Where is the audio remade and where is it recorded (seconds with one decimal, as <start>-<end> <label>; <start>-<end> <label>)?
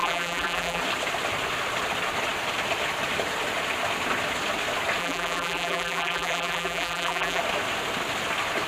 0.0-0.8 remade; 0.8-5.0 recorded; 5.0-7.4 remade; 7.4-8.7 recorded